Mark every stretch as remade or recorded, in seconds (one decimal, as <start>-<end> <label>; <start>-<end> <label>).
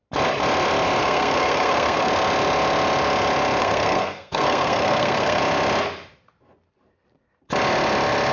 0.0-1.0 recorded; 1.0-2.1 remade; 2.1-3.6 recorded; 3.6-5.4 remade; 5.4-8.3 recorded